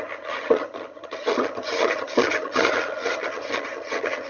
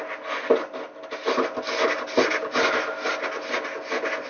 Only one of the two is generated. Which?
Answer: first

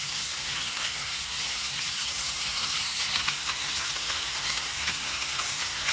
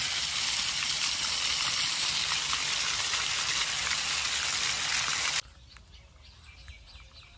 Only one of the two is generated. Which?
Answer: first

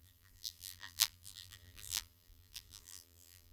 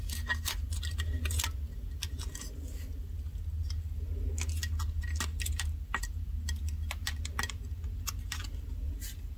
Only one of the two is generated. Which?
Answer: first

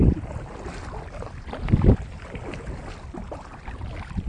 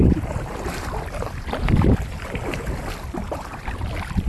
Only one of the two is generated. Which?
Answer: second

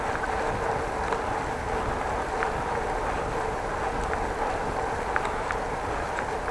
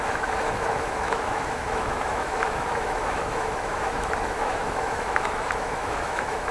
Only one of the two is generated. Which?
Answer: second